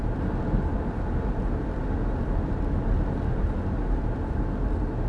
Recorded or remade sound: recorded